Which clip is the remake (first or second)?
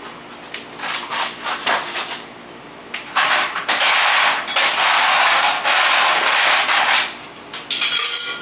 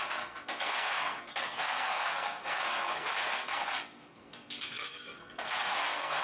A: second